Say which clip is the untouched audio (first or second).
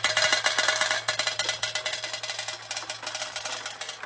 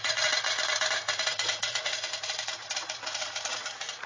first